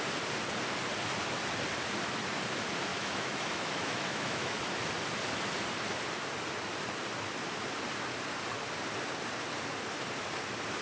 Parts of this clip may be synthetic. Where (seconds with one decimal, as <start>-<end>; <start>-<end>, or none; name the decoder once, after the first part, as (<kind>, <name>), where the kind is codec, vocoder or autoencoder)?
2.9-4.6 (autoencoder, DAC-VAE)